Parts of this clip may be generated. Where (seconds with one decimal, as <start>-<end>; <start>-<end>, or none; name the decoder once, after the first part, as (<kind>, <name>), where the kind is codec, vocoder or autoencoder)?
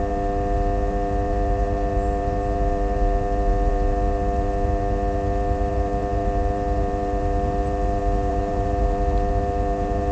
0.0-10.1 (vocoder, BigVGAN v2)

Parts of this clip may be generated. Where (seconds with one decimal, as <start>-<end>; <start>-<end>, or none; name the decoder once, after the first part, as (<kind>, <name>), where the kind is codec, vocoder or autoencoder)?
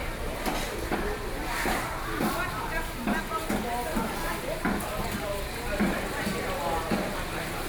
0.0-3.2 (vocoder, BigVGAN v2); 5.6-6.6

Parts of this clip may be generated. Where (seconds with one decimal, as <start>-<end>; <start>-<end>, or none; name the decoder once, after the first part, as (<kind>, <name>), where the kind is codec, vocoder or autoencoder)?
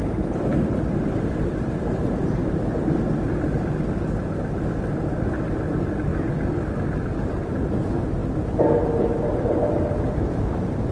0.0-2.4 (vocoder, BigVGAN v2); 5.0-6.1; 7.3-10.9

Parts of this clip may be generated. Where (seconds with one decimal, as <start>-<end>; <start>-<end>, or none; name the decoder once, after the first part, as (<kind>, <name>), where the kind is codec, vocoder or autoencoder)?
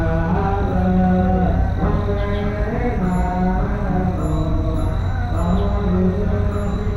none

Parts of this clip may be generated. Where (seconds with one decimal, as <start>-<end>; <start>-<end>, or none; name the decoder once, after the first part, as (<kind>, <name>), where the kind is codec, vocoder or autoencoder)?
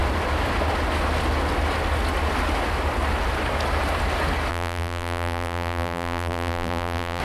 4.5-7.2 (vocoder, BigVGAN v2)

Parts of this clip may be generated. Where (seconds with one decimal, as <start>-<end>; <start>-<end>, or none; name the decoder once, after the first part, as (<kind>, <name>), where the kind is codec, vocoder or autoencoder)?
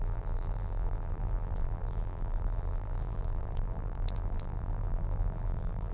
0.0-5.9 (vocoder, BigVGAN v2)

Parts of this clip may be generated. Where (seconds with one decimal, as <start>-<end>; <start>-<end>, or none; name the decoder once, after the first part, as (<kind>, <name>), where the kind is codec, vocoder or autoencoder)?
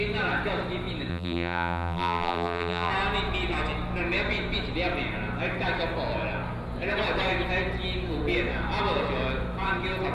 1.1-2.9 (vocoder, BigVGAN v2)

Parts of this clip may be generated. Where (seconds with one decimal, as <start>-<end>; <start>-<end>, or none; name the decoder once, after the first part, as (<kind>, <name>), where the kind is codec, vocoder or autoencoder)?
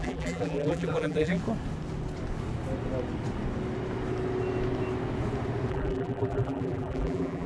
0.0-1.4 (vocoder, BigVGAN v2); 5.7-7.5